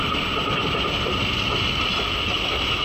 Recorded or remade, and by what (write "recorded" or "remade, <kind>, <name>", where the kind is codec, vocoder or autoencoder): recorded